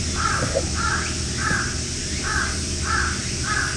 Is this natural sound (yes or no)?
yes